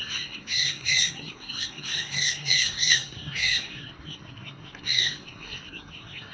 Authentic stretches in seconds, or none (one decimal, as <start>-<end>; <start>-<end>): none